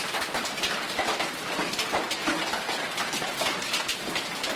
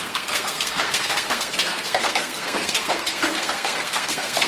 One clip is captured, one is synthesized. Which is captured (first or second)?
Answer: first